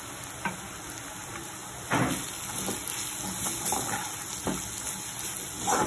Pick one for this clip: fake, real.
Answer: real